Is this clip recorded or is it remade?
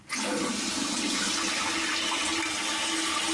recorded